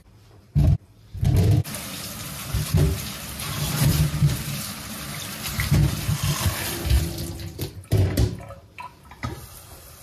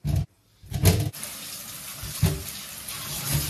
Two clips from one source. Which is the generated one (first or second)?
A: first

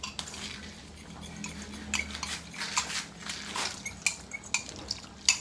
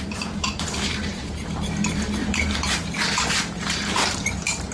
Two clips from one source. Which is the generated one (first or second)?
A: second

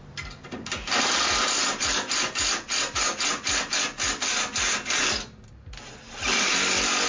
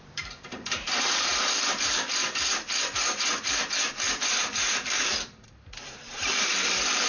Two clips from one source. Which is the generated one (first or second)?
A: second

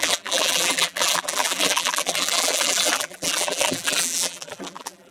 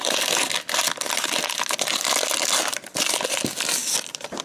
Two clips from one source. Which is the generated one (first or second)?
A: first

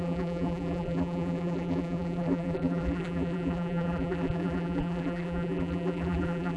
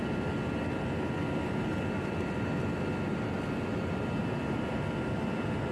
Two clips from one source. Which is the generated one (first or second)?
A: first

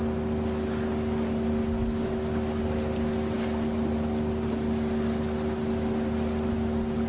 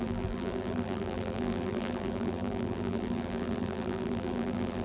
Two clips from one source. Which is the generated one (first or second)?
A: second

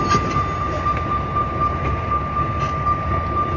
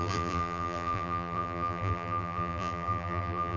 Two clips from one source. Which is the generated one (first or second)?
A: second